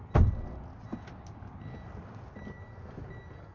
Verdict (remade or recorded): recorded